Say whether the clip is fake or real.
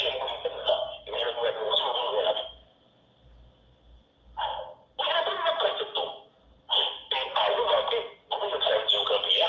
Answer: real